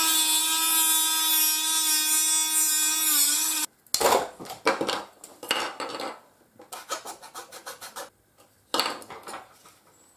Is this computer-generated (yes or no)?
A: no